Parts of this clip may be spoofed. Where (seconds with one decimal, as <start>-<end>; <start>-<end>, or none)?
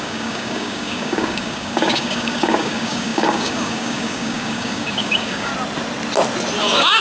0.0-5.5; 6.6-7.0